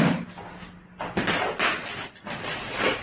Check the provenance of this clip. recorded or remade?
remade